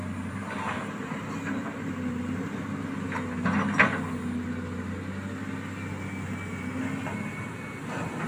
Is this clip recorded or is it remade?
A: recorded